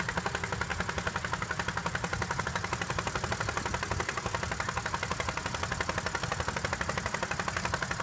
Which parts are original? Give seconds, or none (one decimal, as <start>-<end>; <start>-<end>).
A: 0.0-8.0